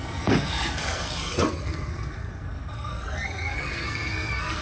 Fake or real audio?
fake